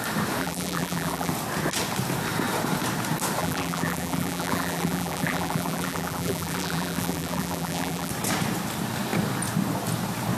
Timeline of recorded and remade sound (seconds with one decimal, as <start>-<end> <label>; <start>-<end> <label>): 0.0-0.4 recorded; 0.4-1.3 remade; 1.3-3.4 recorded; 3.4-8.1 remade; 8.1-10.4 recorded